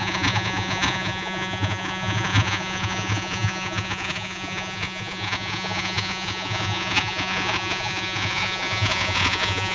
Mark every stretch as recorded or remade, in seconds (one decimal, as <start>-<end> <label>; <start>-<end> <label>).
0.0-9.7 remade